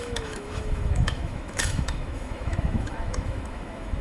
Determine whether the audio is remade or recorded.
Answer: remade